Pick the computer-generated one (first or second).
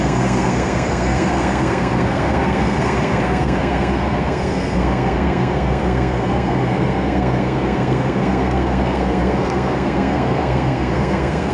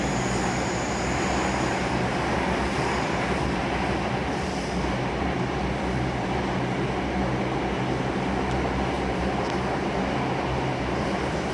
first